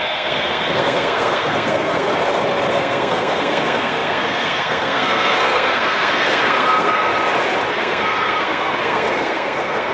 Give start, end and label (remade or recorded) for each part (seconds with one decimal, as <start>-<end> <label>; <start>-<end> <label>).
0.0-2.1 remade; 2.1-2.7 recorded; 2.7-7.1 remade; 7.1-7.7 recorded; 7.7-9.9 remade